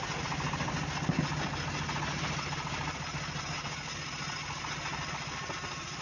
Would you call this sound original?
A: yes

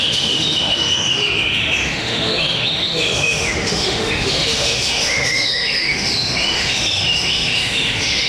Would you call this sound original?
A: no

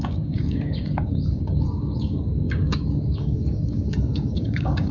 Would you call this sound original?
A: no